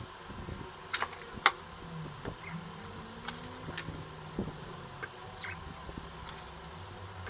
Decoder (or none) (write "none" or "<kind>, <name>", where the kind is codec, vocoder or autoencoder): none